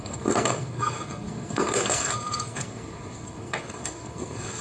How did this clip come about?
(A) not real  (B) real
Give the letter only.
A